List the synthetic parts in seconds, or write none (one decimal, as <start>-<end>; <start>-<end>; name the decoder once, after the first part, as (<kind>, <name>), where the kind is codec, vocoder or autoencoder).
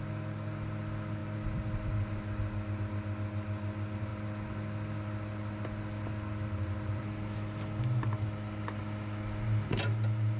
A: none